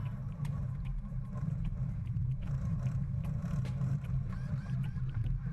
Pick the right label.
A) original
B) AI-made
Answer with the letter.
B